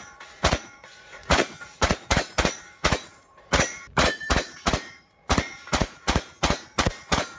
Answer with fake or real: fake